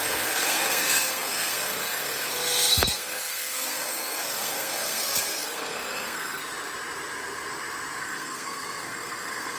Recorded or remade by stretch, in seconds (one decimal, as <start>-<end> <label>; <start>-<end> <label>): 0.0-6.4 remade; 6.4-8.0 recorded; 8.0-9.6 remade